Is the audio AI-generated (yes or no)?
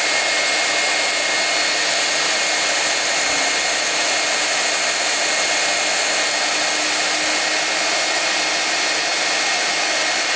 no